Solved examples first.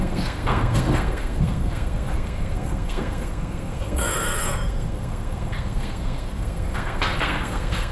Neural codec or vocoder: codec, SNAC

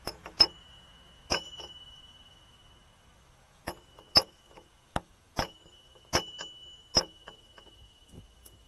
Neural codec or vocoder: autoencoder, DAC-VAE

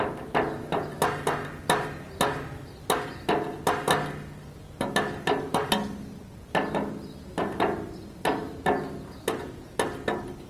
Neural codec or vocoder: none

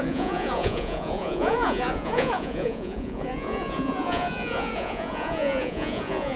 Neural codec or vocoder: vocoder, Vocos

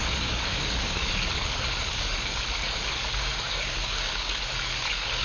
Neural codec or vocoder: codec, DAC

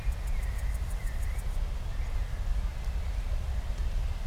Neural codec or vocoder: none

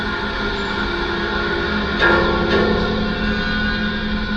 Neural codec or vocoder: none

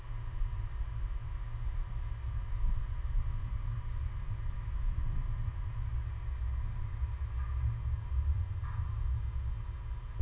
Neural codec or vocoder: none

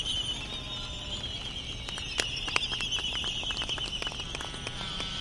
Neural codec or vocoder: none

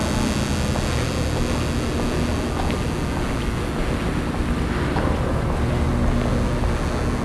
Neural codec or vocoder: none